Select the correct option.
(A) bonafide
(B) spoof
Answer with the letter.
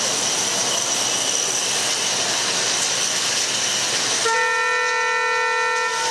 A